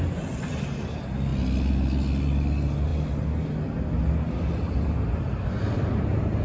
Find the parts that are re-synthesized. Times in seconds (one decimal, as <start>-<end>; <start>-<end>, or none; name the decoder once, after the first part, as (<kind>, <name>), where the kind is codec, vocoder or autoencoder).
none